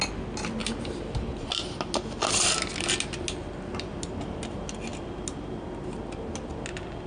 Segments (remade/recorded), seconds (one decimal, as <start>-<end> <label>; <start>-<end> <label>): 0.0-7.1 recorded